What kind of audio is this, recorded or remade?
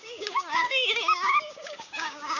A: remade